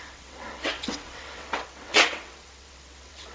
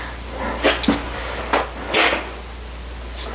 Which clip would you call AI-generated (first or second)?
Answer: first